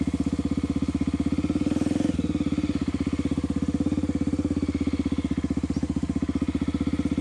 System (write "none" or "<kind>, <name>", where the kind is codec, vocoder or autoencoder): none